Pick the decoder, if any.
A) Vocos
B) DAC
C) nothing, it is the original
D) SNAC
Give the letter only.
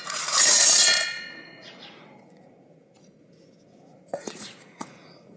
A